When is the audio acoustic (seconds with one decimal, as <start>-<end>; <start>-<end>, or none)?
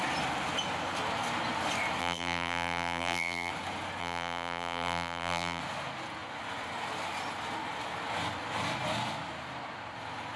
0.0-2.0; 3.5-4.0; 5.6-10.4